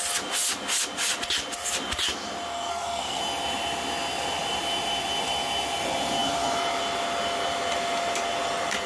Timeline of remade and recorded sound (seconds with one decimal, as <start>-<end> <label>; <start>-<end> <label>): 0.0-2.5 recorded; 2.5-3.2 remade; 3.2-8.9 recorded